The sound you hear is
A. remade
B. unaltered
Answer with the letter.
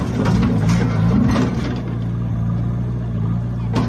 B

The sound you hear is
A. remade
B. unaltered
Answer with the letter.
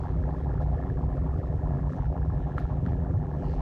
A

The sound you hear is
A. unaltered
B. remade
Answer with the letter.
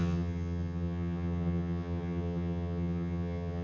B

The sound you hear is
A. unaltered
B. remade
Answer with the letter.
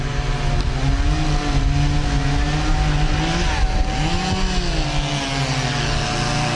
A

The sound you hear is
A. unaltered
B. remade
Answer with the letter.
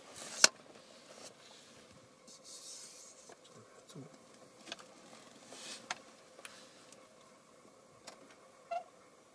A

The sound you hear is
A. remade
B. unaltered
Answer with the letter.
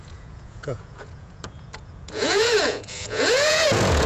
A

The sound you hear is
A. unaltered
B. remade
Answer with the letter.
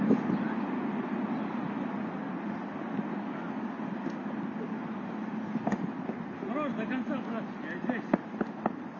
A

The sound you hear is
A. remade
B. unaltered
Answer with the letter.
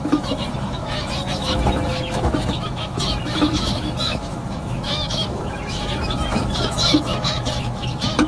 A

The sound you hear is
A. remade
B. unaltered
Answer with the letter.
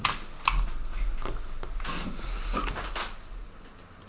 B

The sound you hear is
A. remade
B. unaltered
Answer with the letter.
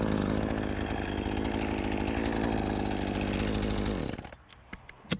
B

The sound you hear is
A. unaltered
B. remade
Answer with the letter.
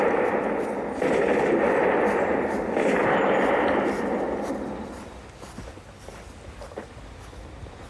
A